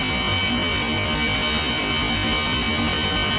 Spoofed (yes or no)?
no